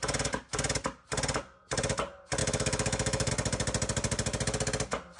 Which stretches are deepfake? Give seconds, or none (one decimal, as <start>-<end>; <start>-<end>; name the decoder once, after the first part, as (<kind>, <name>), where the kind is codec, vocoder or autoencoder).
2.4-3.3 (autoencoder, DAC-VAE)